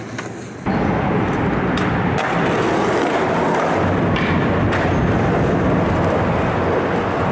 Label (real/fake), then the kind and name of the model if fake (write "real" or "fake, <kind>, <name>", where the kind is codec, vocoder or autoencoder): real